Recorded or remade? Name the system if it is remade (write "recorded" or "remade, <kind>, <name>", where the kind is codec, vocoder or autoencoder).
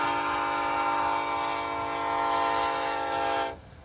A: recorded